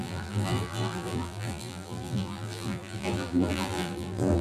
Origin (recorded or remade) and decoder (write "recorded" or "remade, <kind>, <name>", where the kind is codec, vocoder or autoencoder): remade, vocoder, BigVGAN v2